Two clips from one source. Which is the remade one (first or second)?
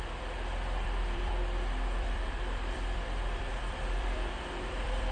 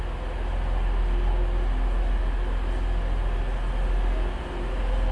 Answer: first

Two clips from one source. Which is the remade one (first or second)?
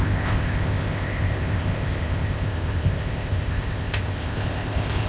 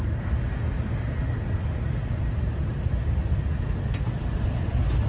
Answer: first